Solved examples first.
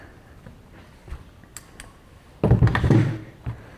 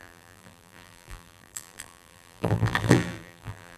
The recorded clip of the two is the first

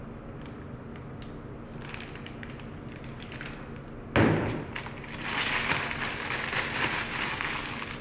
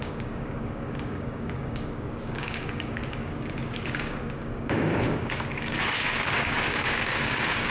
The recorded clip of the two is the first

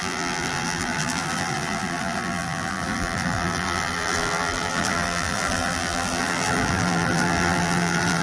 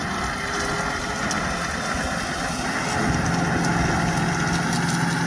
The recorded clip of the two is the second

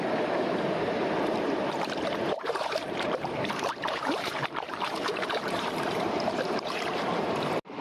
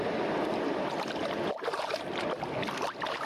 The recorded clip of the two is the second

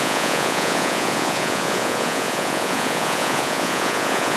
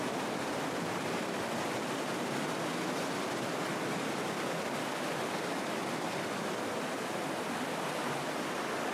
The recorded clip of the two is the second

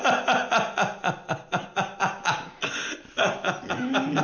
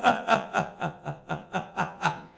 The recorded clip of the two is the first